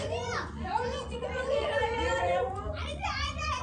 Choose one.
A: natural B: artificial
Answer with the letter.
B